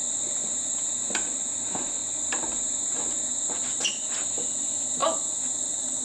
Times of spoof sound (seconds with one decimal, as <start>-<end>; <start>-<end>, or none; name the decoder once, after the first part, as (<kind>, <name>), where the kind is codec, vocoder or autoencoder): 0.0-0.5 (vocoder, BigVGAN v2)